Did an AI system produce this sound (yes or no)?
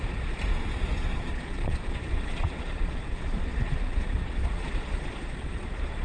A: yes